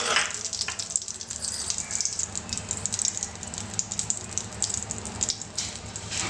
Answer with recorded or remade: recorded